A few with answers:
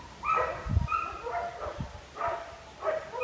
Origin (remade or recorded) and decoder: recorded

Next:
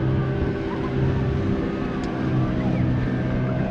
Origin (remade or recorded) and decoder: recorded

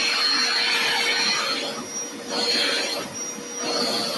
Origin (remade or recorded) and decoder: recorded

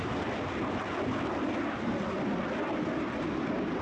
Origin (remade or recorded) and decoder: recorded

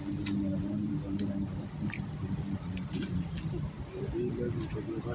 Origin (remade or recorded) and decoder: remade, vocoder, BigVGAN v2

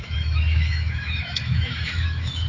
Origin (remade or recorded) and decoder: remade, autoencoder, DAC-VAE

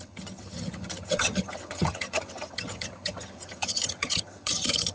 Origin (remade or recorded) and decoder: remade, vocoder, HiFi-GAN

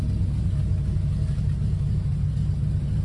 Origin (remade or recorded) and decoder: recorded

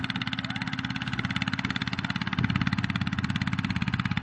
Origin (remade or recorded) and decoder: recorded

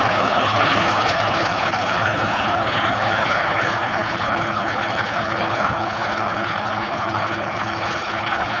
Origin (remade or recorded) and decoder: remade, codec, HILCodec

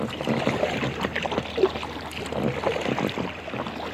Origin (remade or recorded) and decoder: recorded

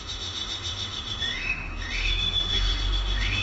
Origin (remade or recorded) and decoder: remade, autoencoder, DAC-VAE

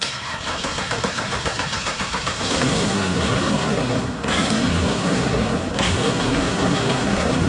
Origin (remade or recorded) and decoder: remade, codec, SNAC